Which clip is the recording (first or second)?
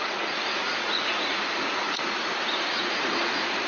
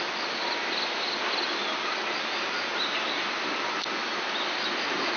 second